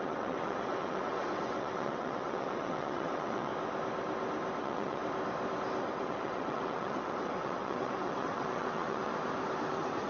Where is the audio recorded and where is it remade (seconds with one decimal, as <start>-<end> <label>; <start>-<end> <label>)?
0.0-3.5 remade; 3.5-4.6 recorded; 4.6-5.0 remade; 5.0-5.8 recorded; 5.8-9.1 remade; 9.1-9.7 recorded; 9.7-10.1 remade